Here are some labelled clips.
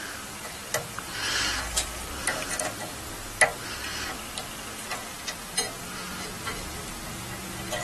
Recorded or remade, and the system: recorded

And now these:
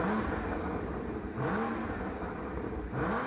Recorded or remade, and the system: recorded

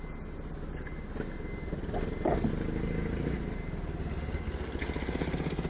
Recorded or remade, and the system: recorded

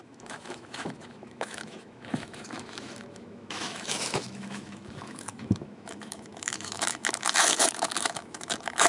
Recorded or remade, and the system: remade, autoencoder, DAC-VAE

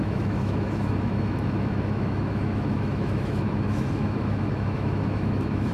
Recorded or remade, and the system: remade, autoencoder, DAC-VAE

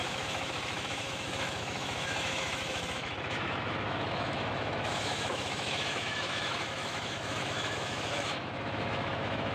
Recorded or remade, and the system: remade, autoencoder, DAC-VAE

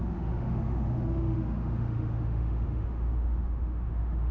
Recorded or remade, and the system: remade, autoencoder, DAC-VAE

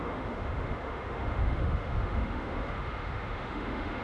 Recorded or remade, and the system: remade, autoencoder, DAC-VAE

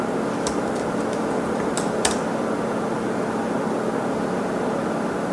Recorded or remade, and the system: recorded